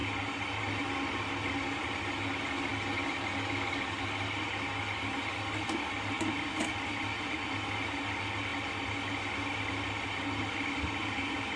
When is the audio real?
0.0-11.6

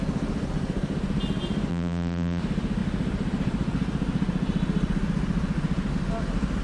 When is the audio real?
0.0-1.7; 2.4-6.6

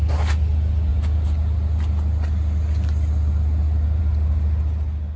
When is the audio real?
0.0-5.2

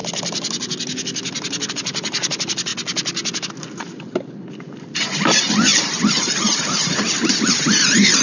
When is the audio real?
0.0-1.7; 2.7-4.5

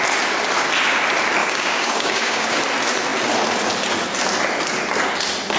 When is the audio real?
0.0-1.4; 2.6-5.6

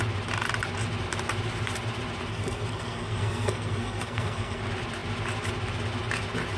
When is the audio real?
0.0-2.3; 4.6-6.6